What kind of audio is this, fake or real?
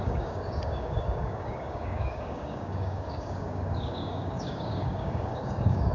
fake